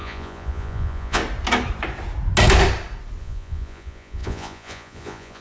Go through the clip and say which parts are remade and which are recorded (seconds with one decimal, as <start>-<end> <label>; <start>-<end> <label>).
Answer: 0.0-1.2 remade; 1.2-3.2 recorded; 3.2-5.4 remade